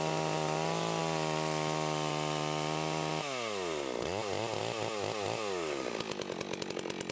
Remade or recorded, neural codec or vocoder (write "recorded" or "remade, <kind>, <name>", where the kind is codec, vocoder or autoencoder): recorded